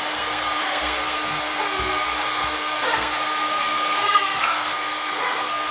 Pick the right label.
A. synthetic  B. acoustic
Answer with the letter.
A